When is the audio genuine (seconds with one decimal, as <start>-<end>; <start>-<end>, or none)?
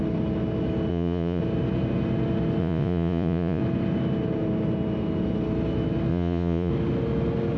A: 0.0-0.9; 1.4-2.6; 3.6-6.1; 6.7-7.6